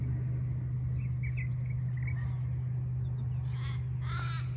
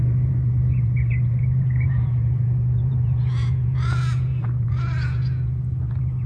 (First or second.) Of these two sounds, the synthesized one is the second